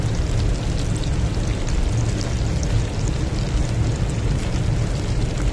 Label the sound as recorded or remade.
recorded